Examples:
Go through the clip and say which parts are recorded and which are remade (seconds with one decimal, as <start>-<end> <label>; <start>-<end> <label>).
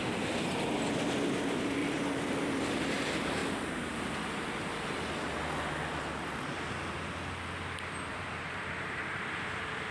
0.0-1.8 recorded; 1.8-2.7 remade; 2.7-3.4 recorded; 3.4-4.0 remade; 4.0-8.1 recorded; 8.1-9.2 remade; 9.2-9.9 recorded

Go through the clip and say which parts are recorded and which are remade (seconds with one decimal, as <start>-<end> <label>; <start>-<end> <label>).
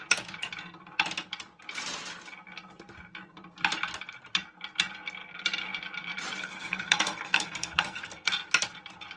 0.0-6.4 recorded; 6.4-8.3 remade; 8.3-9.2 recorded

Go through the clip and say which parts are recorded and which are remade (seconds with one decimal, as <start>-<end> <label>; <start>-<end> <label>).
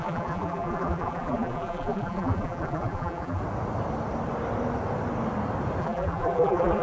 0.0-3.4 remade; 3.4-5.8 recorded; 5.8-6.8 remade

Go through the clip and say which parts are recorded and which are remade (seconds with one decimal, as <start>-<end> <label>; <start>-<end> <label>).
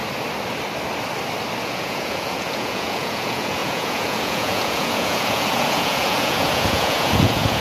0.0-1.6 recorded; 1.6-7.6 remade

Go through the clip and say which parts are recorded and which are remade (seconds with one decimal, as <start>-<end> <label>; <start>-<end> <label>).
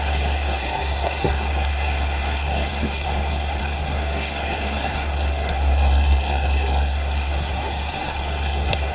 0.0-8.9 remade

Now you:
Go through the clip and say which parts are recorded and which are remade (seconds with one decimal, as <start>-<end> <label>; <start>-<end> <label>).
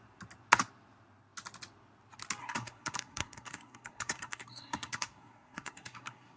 0.0-2.4 recorded; 2.4-6.4 remade